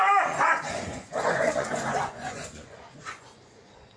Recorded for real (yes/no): no